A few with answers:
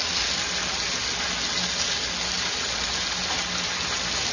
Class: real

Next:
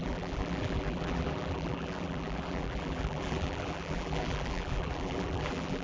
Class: fake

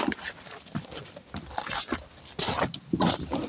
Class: real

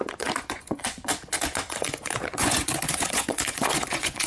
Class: fake